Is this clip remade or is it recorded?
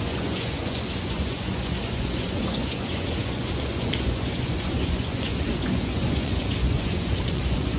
remade